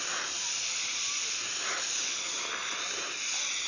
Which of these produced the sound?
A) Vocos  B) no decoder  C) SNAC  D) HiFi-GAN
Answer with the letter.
B